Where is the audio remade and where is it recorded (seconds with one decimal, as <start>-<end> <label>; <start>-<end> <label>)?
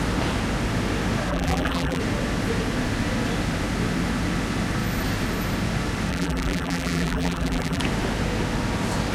0.0-1.3 recorded; 1.3-2.0 remade; 2.0-6.1 recorded; 6.1-7.8 remade; 7.8-9.1 recorded